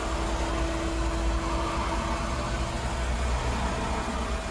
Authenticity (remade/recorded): recorded